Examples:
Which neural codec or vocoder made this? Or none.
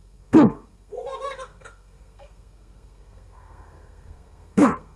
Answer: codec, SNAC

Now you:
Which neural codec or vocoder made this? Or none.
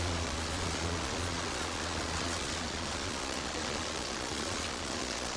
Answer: vocoder, Vocos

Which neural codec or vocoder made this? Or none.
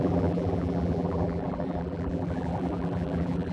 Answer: vocoder, BigVGAN v2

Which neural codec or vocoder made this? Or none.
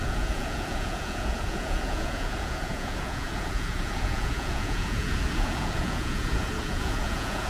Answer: vocoder, Vocos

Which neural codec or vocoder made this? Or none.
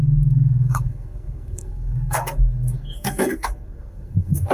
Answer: codec, SNAC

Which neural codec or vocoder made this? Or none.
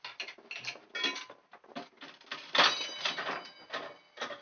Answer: none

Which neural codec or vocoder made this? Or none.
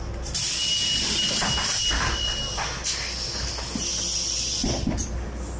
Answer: none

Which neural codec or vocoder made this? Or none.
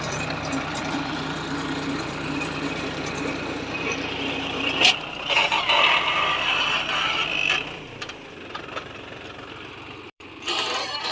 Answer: vocoder, BigVGAN v2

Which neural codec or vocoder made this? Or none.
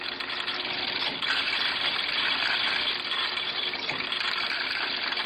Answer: none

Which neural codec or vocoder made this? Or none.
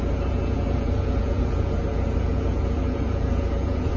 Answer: vocoder, Vocos